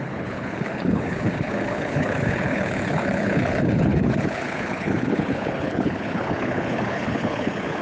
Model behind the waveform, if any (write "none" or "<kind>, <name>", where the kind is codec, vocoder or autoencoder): codec, HILCodec